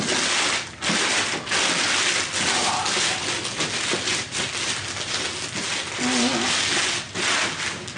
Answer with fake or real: real